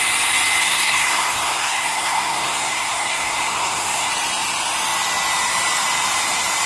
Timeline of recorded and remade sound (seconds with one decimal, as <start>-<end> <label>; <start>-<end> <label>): 0.0-0.6 recorded; 0.6-4.1 remade; 4.1-6.7 recorded